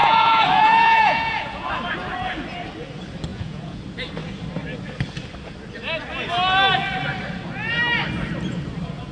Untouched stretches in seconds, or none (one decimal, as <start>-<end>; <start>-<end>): 1.7-3.3; 3.8-9.1